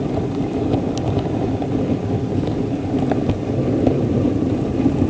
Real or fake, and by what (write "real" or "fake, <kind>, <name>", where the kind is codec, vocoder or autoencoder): real